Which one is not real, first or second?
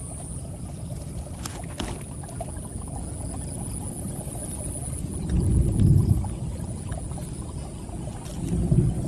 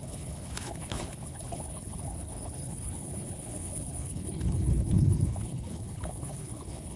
second